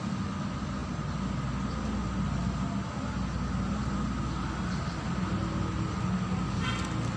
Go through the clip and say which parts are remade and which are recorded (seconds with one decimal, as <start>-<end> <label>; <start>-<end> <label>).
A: 0.0-7.2 recorded

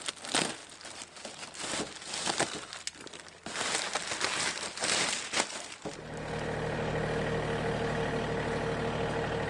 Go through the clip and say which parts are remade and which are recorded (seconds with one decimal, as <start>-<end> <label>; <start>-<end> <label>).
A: 0.0-9.5 recorded

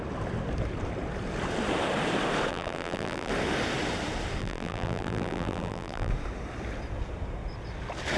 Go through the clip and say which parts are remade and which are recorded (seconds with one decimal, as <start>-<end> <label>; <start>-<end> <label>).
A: 0.0-2.5 recorded; 2.5-3.3 remade; 3.3-4.4 recorded; 4.4-6.1 remade; 6.1-8.2 recorded